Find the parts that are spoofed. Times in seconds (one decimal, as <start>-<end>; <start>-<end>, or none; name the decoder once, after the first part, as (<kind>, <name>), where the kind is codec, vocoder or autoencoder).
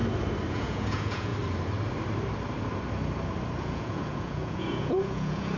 0.5-1.3 (vocoder, Vocos); 3.6-5.6